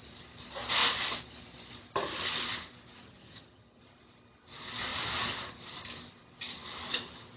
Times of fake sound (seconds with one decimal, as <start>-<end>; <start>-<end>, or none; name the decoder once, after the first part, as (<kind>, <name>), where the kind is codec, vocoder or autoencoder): 3.0-3.8 (vocoder, HiFi-GAN)